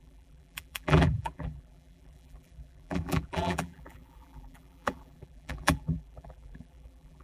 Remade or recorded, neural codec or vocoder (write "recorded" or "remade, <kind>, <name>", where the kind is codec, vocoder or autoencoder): remade, vocoder, BigVGAN v2